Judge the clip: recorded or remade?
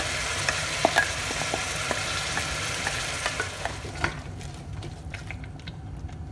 remade